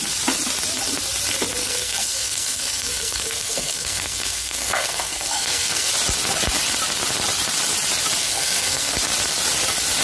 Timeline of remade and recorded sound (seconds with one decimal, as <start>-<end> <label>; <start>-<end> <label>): 0.0-1.6 recorded; 1.6-5.9 remade; 5.9-8.2 recorded; 8.2-8.9 remade; 8.9-10.0 recorded